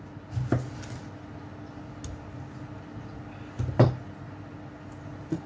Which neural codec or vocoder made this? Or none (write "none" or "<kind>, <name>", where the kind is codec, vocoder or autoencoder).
none